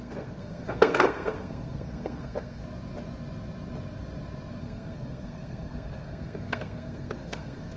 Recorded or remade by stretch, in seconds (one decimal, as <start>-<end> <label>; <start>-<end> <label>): 0.0-2.6 remade; 2.6-4.6 recorded; 4.6-7.8 remade